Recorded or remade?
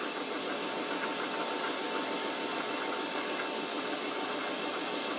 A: recorded